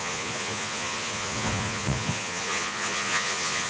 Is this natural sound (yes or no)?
no